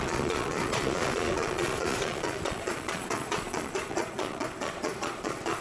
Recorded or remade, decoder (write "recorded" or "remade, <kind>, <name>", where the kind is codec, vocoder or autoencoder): remade, vocoder, Vocos